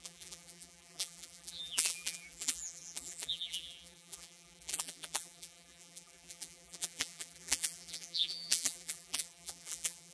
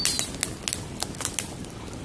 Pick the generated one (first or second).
first